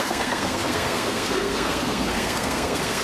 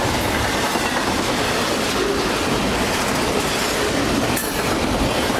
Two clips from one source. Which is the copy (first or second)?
first